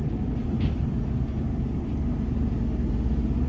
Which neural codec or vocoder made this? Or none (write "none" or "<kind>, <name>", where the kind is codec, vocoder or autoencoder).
none